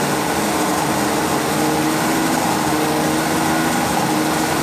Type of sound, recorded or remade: recorded